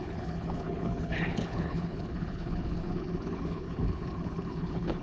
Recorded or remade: remade